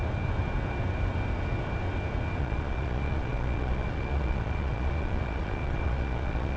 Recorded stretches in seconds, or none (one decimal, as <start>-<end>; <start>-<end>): 0.0-2.4